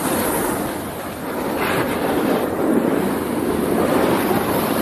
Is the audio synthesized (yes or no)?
no